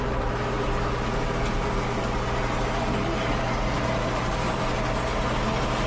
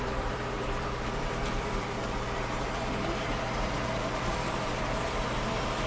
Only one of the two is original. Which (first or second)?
first